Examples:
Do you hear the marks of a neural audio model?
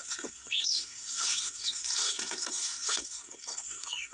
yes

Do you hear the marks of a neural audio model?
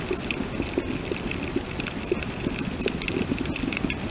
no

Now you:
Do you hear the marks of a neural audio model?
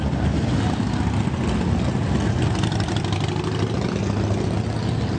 no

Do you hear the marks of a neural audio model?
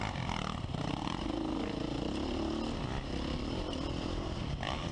no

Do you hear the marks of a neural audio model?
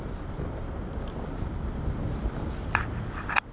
no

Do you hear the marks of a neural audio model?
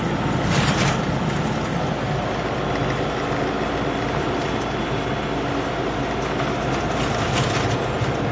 no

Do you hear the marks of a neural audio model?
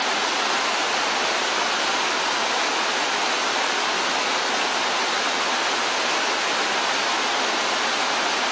no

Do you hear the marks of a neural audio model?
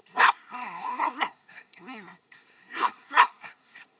yes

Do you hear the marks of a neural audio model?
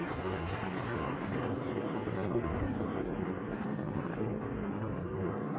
yes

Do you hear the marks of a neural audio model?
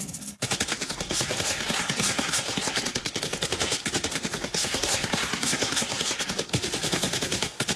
yes